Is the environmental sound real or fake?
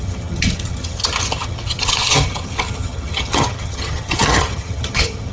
fake